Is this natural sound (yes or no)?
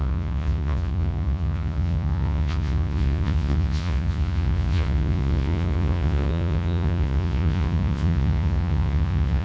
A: no